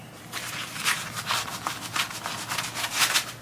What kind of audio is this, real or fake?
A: real